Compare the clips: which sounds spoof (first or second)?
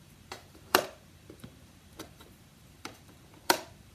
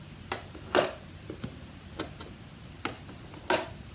first